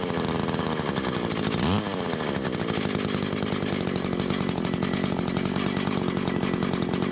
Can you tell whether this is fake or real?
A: real